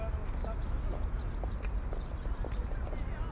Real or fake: real